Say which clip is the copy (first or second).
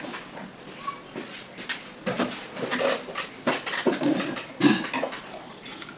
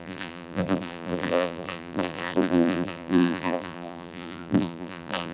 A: second